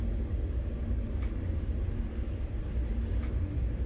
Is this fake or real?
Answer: real